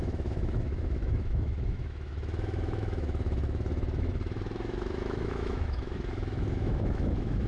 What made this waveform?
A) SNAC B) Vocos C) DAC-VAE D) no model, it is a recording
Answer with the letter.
C